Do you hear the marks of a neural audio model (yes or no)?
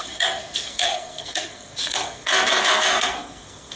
yes